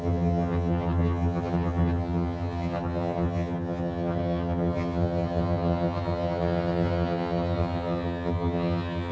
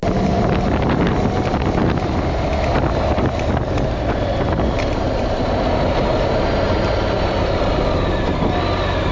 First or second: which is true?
second